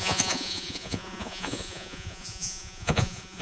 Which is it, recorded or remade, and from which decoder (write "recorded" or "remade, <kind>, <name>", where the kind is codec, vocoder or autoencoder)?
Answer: remade, vocoder, Vocos